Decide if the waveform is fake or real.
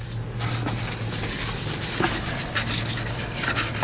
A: real